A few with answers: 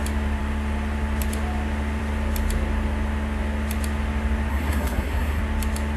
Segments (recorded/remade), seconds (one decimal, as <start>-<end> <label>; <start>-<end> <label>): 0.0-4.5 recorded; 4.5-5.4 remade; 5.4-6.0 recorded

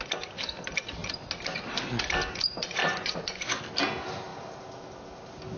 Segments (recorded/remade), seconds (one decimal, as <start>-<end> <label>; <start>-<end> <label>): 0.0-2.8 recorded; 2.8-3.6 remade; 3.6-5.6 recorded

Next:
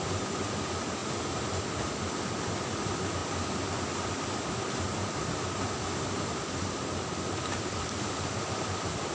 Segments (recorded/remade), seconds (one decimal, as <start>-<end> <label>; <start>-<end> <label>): 0.0-9.1 recorded

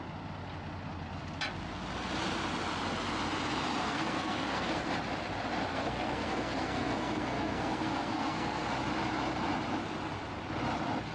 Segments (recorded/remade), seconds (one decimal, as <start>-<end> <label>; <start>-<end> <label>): 0.0-3.8 recorded; 3.8-4.9 remade; 4.9-5.7 recorded; 5.7-8.7 remade; 8.7-11.1 recorded

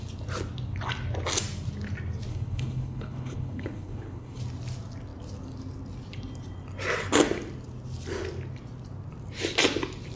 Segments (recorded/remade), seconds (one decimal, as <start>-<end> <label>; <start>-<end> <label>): 0.0-2.3 recorded; 2.3-4.4 remade; 4.4-10.2 recorded